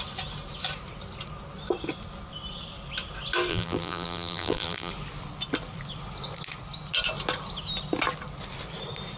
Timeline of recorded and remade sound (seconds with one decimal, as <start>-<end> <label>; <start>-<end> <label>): 0.0-3.5 recorded; 3.5-4.9 remade; 4.9-9.2 recorded